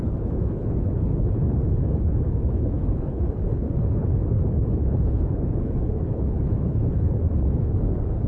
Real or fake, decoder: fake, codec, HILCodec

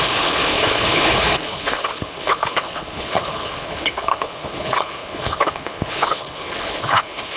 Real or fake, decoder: fake, codec, HILCodec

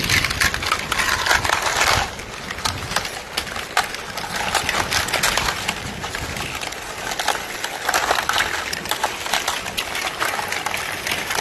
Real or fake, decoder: real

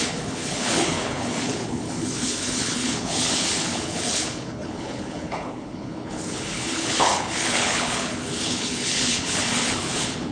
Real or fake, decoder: fake, codec, HILCodec